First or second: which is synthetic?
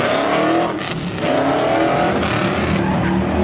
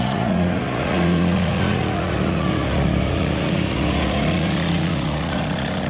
second